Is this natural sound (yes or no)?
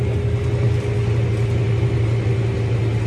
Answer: yes